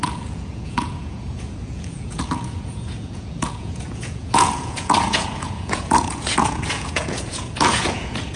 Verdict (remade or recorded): remade